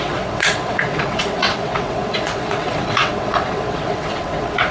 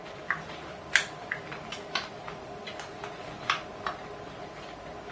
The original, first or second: second